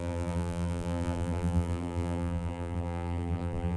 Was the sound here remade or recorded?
remade